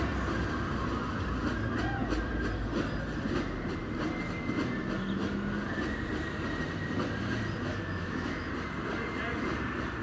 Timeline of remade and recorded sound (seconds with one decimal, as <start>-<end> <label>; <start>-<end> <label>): 0.0-7.7 recorded; 7.7-8.5 remade; 8.5-10.0 recorded